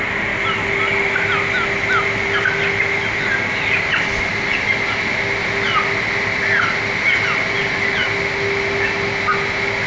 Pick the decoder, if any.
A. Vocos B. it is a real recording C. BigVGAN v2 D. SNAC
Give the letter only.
B